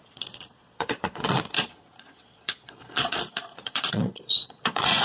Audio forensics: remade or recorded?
remade